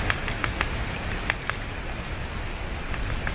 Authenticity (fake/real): real